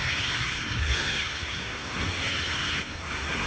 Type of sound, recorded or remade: remade